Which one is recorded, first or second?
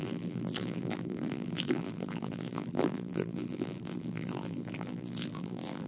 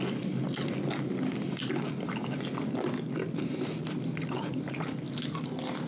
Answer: second